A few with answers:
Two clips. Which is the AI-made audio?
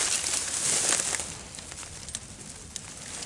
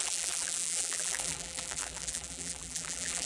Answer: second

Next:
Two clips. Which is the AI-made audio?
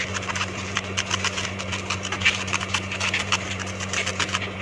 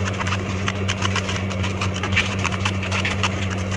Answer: second